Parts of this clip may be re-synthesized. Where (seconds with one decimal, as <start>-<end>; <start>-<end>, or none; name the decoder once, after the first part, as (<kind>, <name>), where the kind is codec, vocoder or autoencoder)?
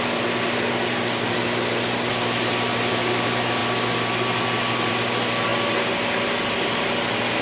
0.0-3.6 (vocoder, BigVGAN v2); 4.9-5.5